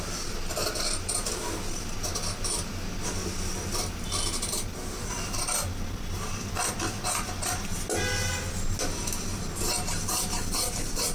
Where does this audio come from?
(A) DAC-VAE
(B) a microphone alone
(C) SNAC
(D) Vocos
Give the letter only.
B